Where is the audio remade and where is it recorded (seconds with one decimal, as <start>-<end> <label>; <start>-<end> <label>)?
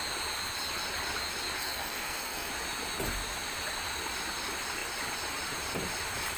0.0-1.6 recorded; 1.6-2.5 remade; 2.5-6.4 recorded